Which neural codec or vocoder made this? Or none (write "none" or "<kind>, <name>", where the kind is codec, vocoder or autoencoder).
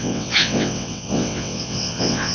vocoder, WaveNeXt